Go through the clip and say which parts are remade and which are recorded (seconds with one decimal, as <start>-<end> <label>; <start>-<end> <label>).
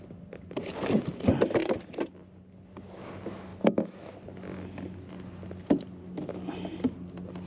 0.0-3.5 recorded; 3.5-4.1 remade; 4.1-7.5 recorded